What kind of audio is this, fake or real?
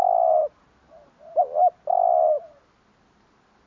real